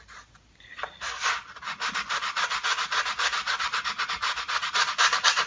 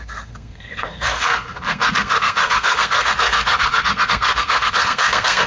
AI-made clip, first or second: second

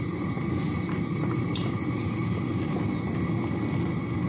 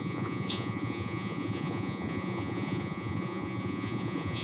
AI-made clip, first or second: second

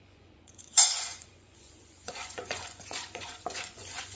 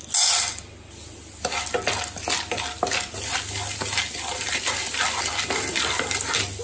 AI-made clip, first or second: first